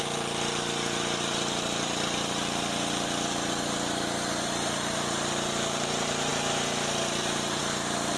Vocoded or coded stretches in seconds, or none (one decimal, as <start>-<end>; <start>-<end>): 0.0-8.2